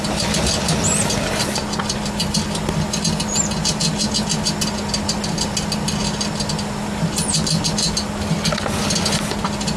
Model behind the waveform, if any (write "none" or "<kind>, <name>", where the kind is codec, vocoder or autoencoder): none